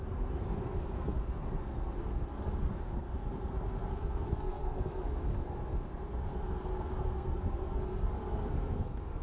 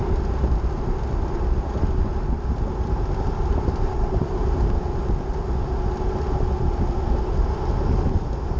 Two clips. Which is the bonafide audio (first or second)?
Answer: second